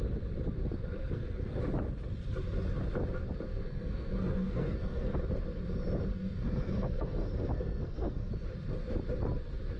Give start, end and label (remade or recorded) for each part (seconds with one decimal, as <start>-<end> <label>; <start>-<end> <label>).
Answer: 0.0-1.0 recorded; 1.0-1.6 remade; 1.6-3.5 recorded; 3.5-5.1 remade; 5.1-6.1 recorded; 6.1-8.3 remade; 8.3-9.8 recorded